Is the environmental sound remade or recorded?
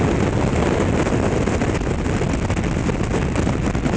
recorded